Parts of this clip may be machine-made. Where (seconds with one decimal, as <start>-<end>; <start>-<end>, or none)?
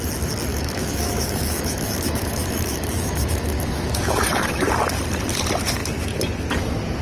0.5-4.7